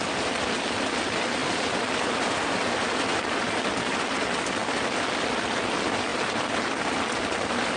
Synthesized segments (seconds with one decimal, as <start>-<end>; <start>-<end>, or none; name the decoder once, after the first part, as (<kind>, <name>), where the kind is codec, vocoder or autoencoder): 1.4-2.5 (vocoder, BigVGAN v2); 3.1-4.0; 4.6-5.3; 6.1-6.8